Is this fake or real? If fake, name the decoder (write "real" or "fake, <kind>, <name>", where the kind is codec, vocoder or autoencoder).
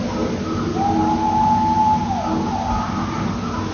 real